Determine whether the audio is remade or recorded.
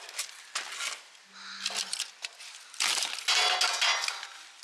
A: recorded